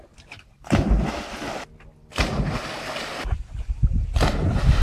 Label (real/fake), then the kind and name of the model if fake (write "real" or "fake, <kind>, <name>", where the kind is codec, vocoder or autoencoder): real